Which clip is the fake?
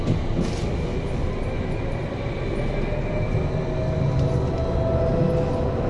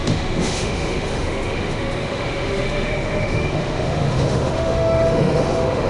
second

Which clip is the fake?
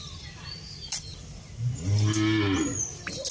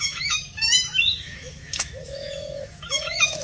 second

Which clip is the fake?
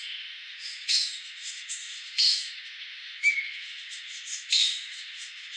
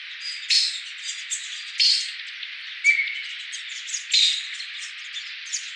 first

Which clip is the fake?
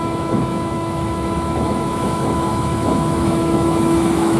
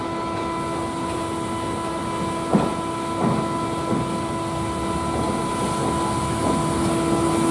first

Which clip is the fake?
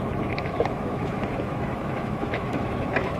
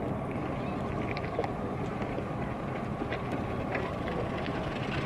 first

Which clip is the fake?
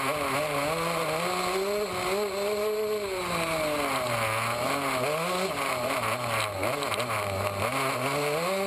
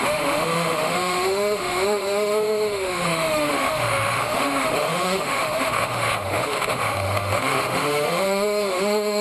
second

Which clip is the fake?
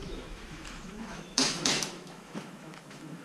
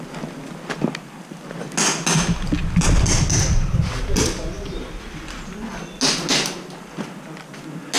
first